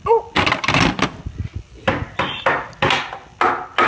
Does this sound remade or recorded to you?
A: recorded